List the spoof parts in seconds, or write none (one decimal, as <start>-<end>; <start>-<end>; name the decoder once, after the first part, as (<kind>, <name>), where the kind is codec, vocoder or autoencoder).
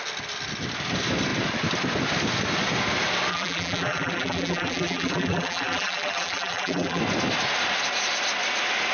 3.3-7.0 (vocoder, BigVGAN v2)